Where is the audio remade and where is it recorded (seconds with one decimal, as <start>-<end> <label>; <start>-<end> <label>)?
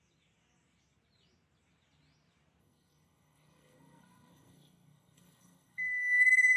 0.0-2.6 recorded; 2.6-6.6 remade